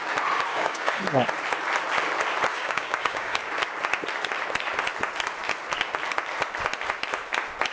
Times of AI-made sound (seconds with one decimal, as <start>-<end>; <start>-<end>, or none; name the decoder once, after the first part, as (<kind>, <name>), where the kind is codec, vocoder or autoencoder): 0.5-1.0 (codec, DAC); 2.5-3.4